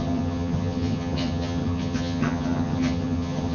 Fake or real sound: fake